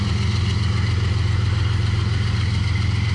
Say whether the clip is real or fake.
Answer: real